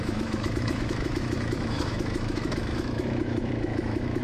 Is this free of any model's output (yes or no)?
no